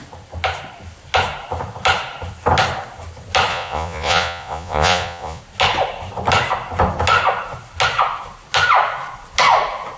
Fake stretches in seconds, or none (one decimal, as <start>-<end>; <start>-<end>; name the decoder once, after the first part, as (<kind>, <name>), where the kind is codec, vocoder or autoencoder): 3.5-5.4 (vocoder, Vocos)